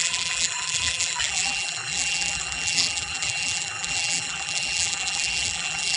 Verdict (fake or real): fake